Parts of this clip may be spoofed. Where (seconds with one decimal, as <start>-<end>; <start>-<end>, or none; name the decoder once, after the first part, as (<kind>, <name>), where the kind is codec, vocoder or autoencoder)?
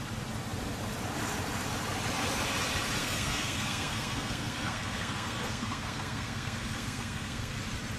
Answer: 3.0-7.6 (codec, SNAC)